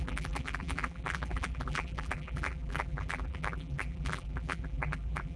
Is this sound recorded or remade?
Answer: remade